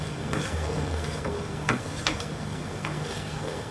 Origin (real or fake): fake